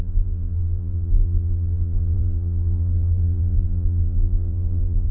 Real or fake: fake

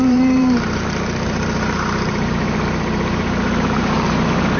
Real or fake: fake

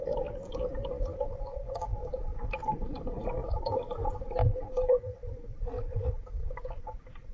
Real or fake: fake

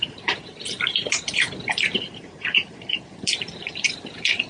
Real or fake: fake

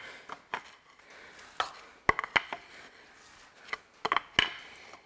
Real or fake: real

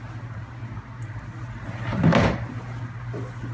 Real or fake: real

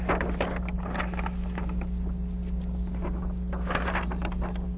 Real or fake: real